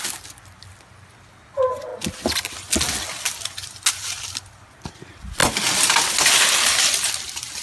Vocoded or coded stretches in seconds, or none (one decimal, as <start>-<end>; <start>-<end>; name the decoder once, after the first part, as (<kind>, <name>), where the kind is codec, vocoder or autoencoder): none